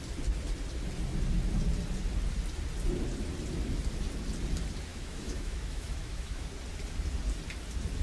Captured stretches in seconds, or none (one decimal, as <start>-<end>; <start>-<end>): 0.0-4.9; 6.5-8.0